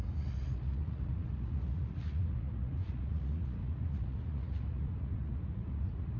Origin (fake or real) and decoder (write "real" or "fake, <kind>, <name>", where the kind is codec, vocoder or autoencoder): fake, vocoder, Vocos